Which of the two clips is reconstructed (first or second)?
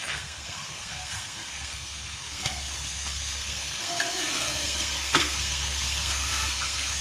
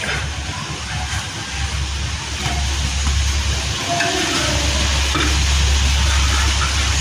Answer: first